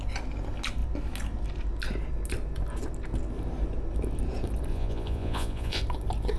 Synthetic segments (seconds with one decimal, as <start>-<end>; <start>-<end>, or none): 4.7-5.8

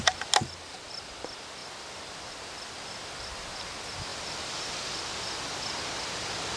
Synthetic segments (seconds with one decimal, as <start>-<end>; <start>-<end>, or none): none

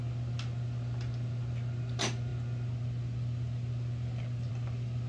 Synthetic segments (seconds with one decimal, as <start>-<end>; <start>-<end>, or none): none